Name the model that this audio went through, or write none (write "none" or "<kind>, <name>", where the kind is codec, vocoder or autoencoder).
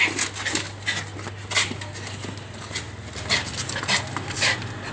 none